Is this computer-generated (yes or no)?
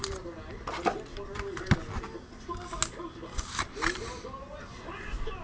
no